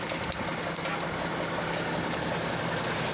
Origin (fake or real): real